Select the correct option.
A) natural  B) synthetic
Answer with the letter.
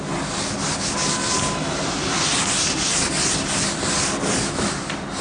A